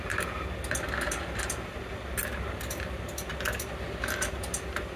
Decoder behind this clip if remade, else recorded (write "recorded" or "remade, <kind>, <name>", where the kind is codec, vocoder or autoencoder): recorded